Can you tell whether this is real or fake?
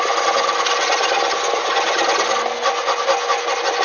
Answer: real